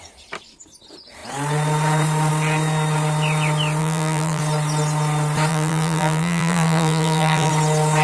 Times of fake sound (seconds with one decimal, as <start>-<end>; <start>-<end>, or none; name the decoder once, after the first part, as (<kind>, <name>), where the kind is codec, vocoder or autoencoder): 3.8-4.4 (vocoder, BigVGAN v2); 5.5-7.5